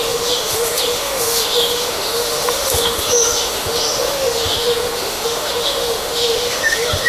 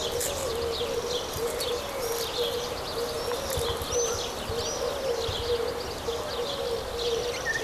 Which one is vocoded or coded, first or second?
first